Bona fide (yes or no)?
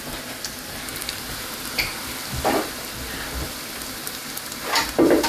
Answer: yes